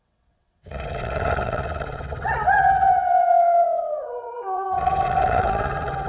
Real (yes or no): no